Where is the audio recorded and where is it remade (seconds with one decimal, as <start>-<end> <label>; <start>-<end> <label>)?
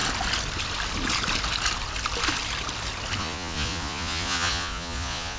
0.0-3.2 recorded; 3.2-5.4 remade